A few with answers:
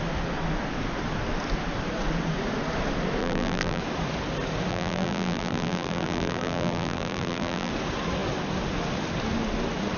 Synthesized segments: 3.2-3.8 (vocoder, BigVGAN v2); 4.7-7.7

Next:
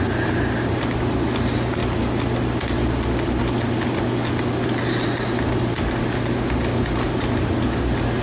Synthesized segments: none

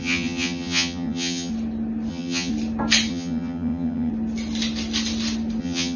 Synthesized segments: 0.0-1.5 (vocoder, HiFi-GAN); 2.1-2.5; 3.1-4.1; 5.6-6.0

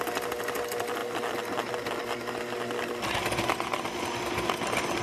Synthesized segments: none

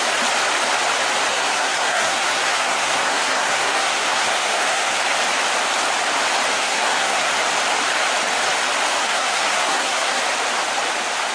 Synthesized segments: 1.3-5.0 (codec, SNAC); 6.5-7.3; 9.0-10.2

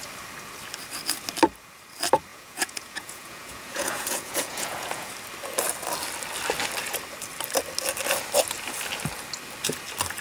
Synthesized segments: 2.3-5.1 (vocoder, Vocos)

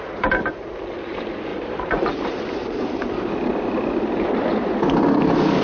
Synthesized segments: 1.5-2.9 (vocoder, BigVGAN v2)